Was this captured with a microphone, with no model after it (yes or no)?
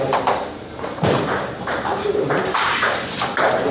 no